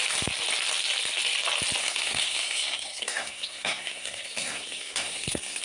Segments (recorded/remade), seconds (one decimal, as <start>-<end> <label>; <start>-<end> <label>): 0.0-1.8 recorded; 1.8-5.6 remade